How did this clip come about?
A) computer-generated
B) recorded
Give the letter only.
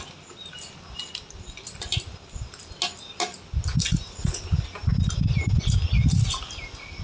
B